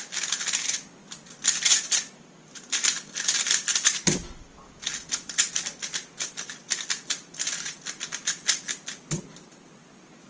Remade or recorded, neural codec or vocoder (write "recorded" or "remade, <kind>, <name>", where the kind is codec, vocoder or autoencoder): recorded